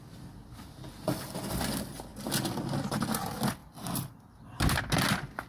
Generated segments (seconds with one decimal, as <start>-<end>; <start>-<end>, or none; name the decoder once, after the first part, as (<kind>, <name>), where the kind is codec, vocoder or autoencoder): none